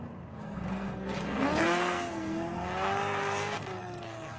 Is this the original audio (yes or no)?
no